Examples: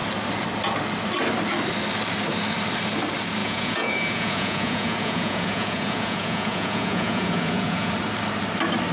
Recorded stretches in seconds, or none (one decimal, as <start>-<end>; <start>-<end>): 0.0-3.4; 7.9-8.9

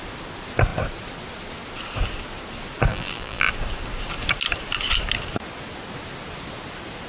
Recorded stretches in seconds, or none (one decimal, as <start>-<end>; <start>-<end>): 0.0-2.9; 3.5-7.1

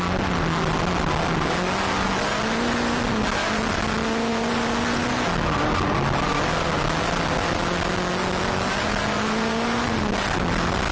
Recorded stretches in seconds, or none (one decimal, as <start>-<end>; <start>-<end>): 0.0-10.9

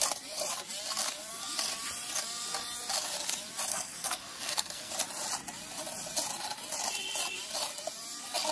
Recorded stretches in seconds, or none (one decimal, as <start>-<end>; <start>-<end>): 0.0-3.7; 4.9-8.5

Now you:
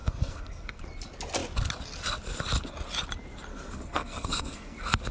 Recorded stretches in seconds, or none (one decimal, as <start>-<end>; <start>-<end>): 0.8-3.5